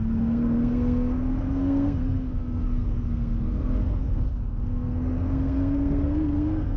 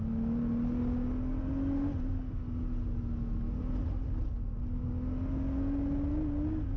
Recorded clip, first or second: second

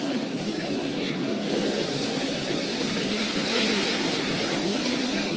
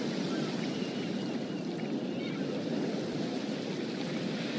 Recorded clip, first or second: second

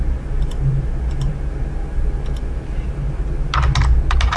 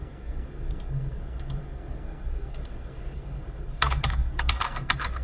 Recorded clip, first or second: first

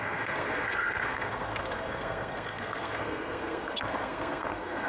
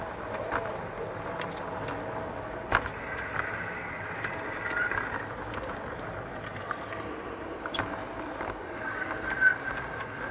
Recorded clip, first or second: second